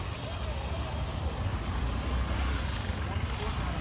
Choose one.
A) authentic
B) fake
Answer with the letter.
A